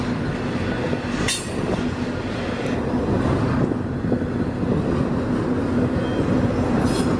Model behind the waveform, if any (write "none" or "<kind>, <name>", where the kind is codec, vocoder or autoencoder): none